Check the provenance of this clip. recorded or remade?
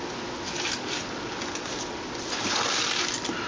recorded